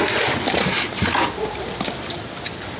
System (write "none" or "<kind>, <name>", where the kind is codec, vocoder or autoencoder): none